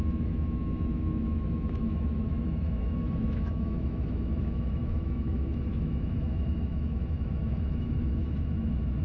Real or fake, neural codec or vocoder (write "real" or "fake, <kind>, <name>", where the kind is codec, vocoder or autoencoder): fake, autoencoder, DAC-VAE